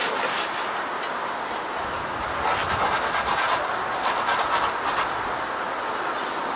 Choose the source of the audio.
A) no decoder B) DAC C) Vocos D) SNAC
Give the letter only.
A